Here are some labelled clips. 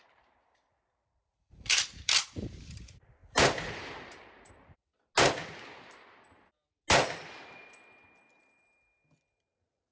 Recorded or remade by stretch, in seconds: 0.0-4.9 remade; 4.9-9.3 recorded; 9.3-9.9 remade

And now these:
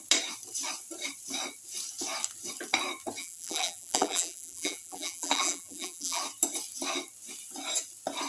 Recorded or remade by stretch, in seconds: 0.0-3.2 recorded; 3.2-6.2 remade; 6.2-8.3 recorded